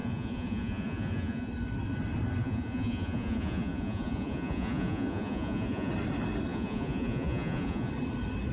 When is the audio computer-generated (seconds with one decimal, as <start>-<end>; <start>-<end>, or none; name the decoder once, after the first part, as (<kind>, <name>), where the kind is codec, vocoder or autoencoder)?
0.0-1.5 (vocoder, Vocos); 2.4-5.9; 6.5-7.9